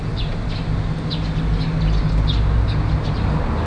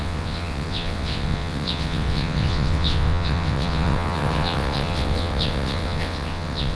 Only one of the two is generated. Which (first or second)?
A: second